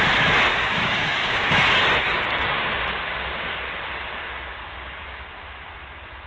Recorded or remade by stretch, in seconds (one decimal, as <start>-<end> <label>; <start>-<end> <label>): 0.0-0.5 recorded; 0.5-1.5 remade; 1.5-2.0 recorded; 2.0-2.9 remade; 2.9-4.6 recorded; 4.6-5.3 remade; 5.3-6.3 recorded